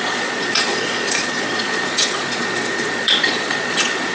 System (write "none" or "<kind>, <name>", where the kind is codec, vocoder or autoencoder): vocoder, Vocos